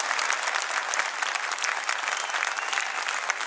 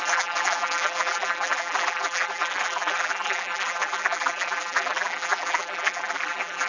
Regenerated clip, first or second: second